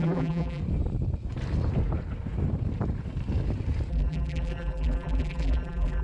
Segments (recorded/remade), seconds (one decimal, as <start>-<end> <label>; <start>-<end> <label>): 0.0-0.6 remade; 0.6-3.9 recorded; 3.9-6.0 remade